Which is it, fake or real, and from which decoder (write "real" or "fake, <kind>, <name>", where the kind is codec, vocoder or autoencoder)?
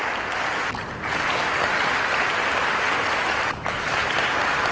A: real